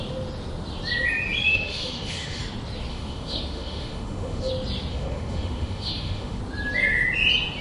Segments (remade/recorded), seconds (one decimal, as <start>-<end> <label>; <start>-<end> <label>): 0.0-1.4 recorded; 1.4-2.4 remade; 2.4-2.9 recorded; 2.9-4.5 remade; 4.5-4.9 recorded; 4.9-6.4 remade; 6.4-7.6 recorded